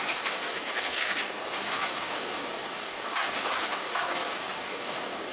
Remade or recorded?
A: remade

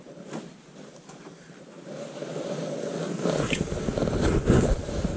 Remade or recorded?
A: recorded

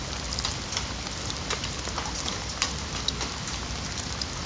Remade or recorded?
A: recorded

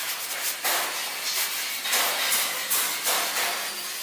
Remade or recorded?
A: recorded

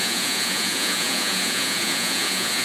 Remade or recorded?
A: remade